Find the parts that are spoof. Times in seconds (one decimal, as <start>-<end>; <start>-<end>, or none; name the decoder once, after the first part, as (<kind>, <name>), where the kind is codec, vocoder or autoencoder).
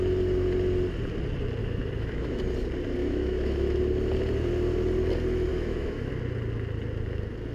1.6-2.4 (autoencoder, DAC-VAE); 3.0-3.8; 5.5-6.1